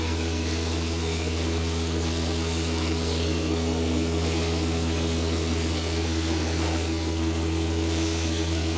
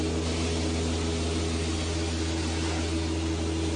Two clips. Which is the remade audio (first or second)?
first